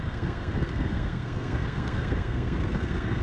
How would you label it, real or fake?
fake